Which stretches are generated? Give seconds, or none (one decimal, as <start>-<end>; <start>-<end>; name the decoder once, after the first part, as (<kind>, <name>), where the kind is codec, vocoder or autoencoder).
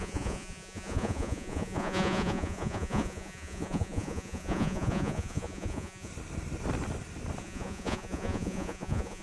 0.0-6.1 (vocoder, Vocos); 7.4-9.2